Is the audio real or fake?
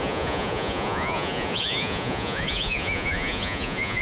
fake